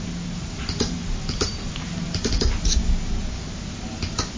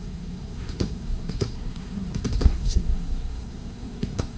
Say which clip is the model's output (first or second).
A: second